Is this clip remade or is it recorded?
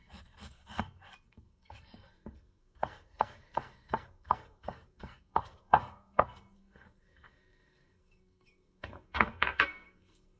remade